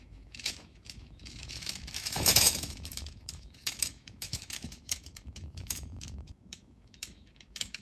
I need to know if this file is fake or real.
fake